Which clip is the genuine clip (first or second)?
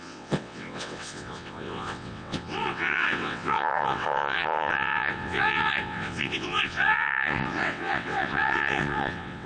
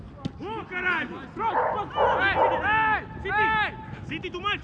second